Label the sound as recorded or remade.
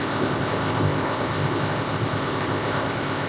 remade